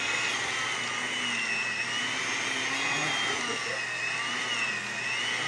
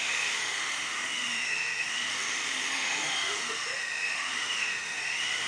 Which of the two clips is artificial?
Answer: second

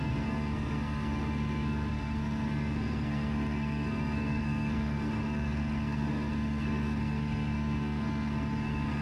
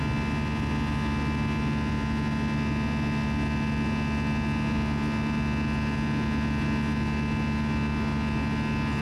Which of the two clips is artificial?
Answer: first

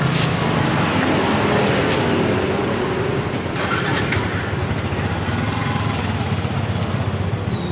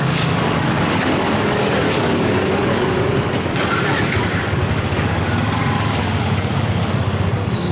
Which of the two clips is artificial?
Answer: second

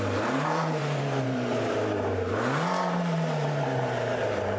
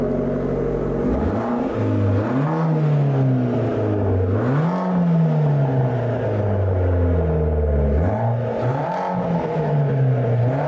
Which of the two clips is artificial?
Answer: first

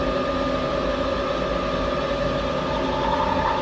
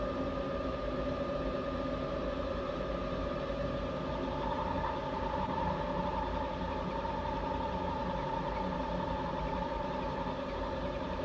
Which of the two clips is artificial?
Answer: second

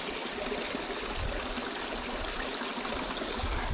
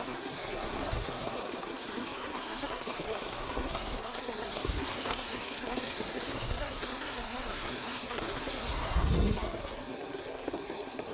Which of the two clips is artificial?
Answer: second